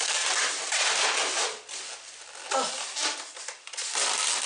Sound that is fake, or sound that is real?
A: real